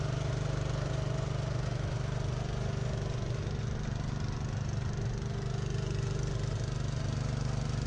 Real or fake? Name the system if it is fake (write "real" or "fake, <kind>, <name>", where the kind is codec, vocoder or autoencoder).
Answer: real